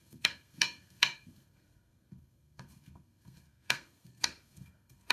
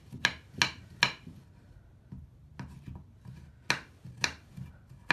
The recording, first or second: second